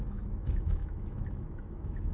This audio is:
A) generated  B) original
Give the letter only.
A